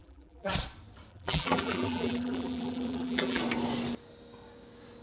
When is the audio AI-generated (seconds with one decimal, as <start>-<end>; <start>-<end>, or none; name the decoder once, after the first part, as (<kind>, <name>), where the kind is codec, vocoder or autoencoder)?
0.0-0.5 (vocoder, BigVGAN v2); 1.1-3.4